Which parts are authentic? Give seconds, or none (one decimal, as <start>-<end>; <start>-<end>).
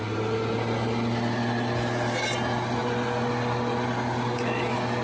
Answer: 0.0-5.0